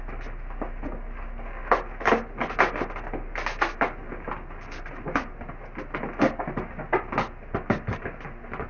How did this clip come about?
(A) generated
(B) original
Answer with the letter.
B